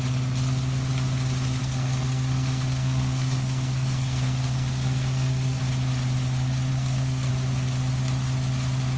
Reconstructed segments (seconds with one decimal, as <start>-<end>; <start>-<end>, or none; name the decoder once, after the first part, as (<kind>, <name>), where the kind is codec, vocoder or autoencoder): 1.6-5.6 (codec, SNAC); 6.7-7.3